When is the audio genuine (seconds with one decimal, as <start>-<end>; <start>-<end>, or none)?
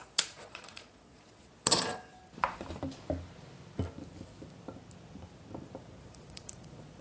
2.2-6.0